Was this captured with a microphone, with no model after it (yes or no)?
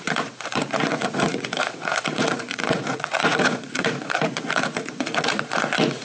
no